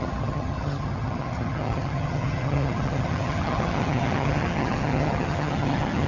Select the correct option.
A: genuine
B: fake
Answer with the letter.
B